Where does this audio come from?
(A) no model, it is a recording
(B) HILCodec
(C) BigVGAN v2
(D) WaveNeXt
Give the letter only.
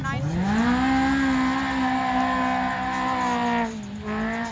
A